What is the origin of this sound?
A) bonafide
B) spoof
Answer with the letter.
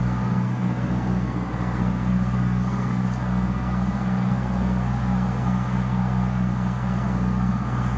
B